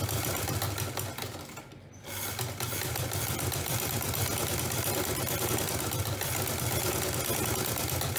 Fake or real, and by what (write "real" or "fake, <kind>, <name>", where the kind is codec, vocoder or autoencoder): real